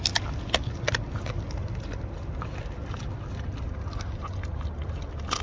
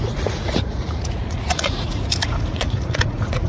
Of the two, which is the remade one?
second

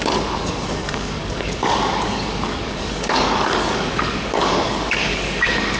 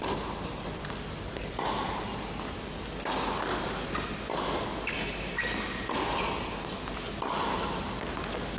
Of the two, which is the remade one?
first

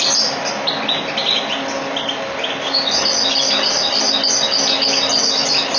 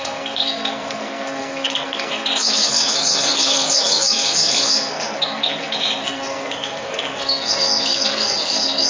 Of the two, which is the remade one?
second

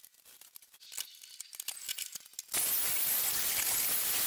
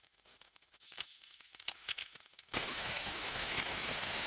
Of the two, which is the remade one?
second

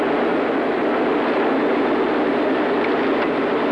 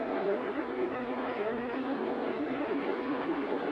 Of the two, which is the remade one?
second